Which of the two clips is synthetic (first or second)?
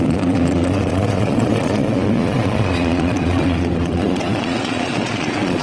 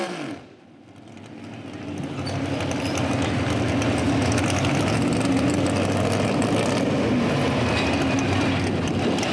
first